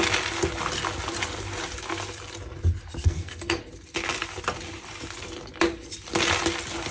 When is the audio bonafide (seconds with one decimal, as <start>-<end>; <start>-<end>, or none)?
0.0-3.0; 3.6-6.9